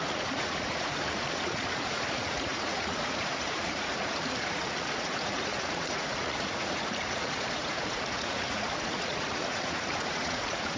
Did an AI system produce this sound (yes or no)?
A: yes